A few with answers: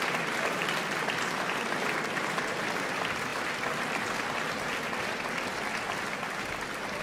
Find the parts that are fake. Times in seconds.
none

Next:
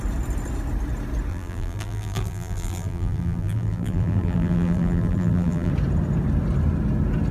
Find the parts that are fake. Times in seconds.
1.3-5.7 (vocoder, BigVGAN v2)